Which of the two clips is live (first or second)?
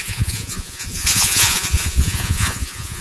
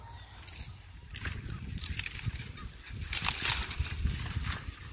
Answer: second